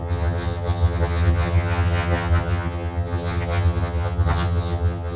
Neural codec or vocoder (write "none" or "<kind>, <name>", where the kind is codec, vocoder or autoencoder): vocoder, HiFi-GAN